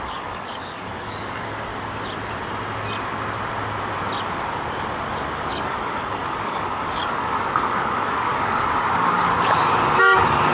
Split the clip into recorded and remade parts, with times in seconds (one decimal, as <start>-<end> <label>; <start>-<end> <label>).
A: 0.0-1.7 remade; 1.7-5.5 recorded; 5.5-10.5 remade